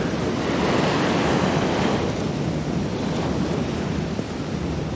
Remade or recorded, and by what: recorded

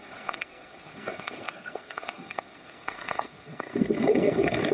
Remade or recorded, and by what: remade, codec, SNAC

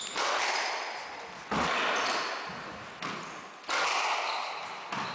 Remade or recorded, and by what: recorded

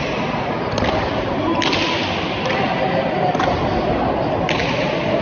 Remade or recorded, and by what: recorded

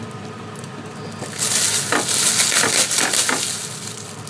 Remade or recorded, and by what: recorded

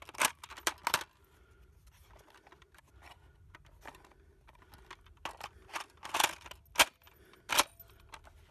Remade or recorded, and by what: recorded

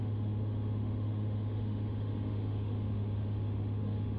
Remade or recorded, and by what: remade, autoencoder, DAC-VAE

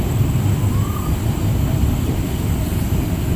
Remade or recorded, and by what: recorded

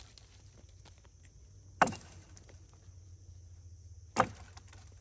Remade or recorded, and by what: recorded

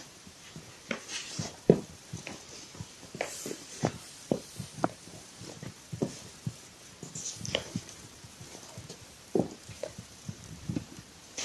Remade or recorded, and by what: remade, vocoder, BigVGAN v2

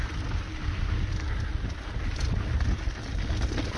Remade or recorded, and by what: recorded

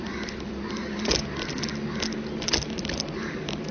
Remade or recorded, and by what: recorded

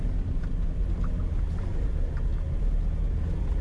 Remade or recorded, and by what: recorded